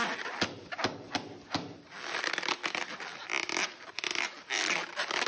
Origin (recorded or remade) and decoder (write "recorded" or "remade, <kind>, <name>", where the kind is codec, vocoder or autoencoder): remade, vocoder, BigVGAN v2